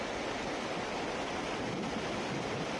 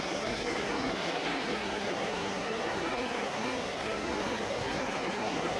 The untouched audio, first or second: first